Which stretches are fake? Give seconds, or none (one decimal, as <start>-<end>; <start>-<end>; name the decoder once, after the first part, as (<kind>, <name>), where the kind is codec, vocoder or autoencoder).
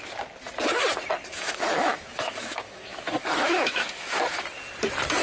1.3-4.4 (autoencoder, DAC-VAE)